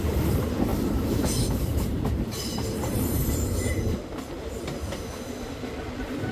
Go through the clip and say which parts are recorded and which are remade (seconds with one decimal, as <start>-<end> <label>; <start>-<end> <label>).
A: 0.0-0.7 recorded; 0.7-4.5 remade; 4.5-6.3 recorded